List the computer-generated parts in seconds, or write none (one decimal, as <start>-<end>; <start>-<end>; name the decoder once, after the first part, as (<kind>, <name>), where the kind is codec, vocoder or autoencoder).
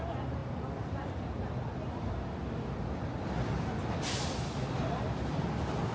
none